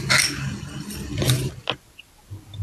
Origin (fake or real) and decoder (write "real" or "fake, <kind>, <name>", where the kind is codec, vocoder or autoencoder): real